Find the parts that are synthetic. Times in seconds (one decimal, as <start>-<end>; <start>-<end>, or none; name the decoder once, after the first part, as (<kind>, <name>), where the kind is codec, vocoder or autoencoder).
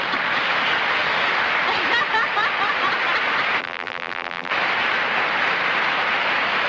3.6-4.5 (vocoder, BigVGAN v2)